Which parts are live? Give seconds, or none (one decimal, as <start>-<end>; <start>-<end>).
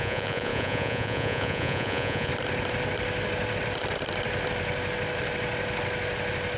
2.3-6.6